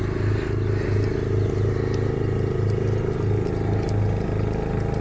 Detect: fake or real real